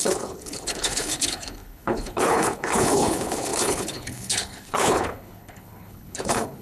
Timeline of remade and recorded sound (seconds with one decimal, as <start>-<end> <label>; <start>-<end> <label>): 0.0-6.6 remade